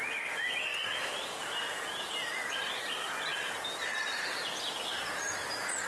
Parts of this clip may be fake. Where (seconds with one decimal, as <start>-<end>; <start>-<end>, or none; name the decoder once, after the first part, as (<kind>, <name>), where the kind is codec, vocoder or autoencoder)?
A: none